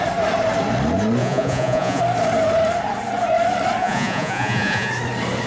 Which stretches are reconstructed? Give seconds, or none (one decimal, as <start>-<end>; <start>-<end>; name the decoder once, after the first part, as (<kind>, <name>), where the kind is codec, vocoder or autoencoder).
1.2-2.0 (vocoder, Vocos); 3.8-4.9